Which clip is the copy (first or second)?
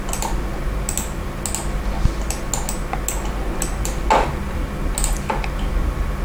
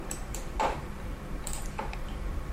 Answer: second